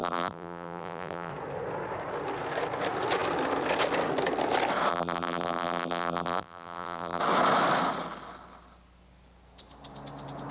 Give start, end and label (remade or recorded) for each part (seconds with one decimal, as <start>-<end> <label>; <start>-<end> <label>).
0.0-1.3 remade; 1.3-4.9 recorded; 4.9-7.2 remade; 7.2-10.5 recorded

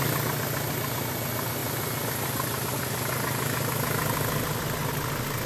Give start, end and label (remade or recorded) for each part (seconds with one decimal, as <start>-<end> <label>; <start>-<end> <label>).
0.0-5.5 recorded

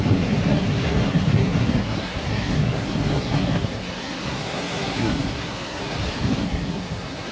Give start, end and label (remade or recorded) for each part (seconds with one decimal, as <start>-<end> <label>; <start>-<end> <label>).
0.0-7.3 remade

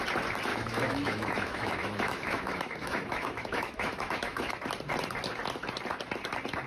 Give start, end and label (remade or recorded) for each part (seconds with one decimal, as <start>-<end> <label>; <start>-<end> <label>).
0.0-0.5 recorded; 0.5-4.5 remade; 4.5-6.7 recorded